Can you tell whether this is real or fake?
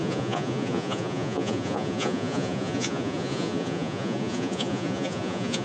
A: fake